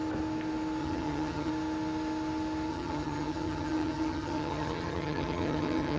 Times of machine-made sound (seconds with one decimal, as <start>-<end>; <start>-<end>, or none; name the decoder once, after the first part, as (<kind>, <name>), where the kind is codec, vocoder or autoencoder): 0.8-1.5 (vocoder, HiFi-GAN); 2.7-6.0